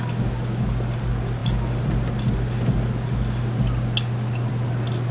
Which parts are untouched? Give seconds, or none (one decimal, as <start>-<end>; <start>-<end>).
0.0-5.1